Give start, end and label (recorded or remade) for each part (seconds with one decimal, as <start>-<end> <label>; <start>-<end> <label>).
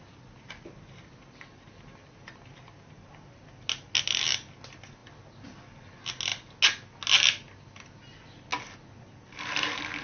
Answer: 0.0-10.0 recorded